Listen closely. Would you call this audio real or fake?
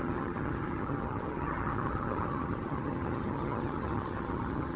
fake